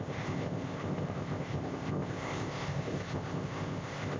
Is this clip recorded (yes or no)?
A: no